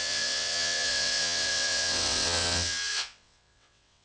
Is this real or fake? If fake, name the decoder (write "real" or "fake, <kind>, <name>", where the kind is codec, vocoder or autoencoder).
fake, vocoder, WaveNeXt